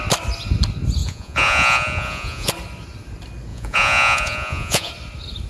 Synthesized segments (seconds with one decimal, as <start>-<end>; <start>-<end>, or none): 1.0-2.5; 3.5-4.9